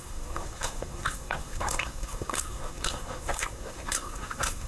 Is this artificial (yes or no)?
yes